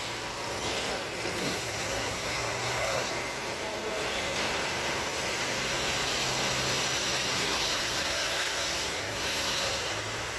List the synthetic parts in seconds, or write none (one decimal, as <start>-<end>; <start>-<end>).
1.4-3.1; 7.3-9.9